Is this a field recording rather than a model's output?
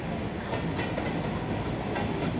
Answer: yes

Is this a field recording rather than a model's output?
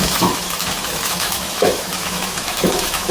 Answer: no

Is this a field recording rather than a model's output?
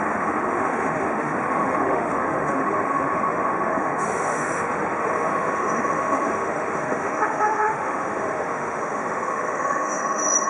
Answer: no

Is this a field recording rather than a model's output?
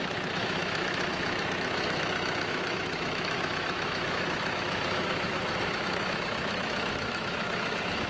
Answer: no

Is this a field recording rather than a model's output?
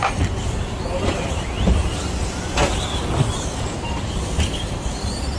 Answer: yes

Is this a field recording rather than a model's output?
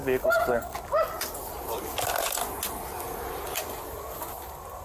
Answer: yes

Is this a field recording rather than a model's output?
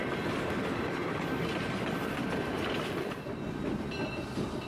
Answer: yes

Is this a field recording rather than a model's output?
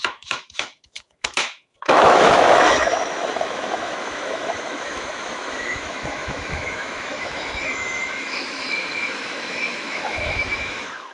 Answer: no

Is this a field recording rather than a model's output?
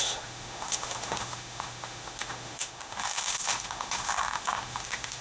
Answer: no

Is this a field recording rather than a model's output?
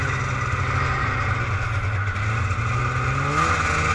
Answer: yes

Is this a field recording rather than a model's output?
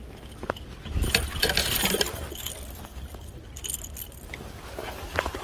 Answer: yes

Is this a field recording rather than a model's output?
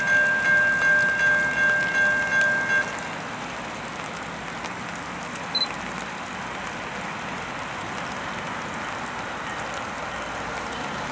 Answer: yes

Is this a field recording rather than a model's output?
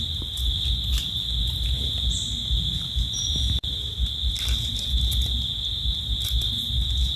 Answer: yes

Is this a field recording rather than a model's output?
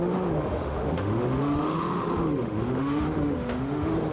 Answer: no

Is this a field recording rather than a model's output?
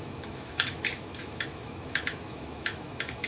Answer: no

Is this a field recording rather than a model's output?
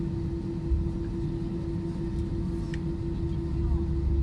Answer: yes